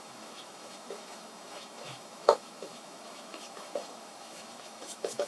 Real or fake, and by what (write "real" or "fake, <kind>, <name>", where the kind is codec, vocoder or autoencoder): fake, autoencoder, DAC-VAE